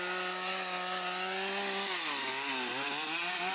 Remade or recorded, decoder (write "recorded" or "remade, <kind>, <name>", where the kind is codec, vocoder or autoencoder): recorded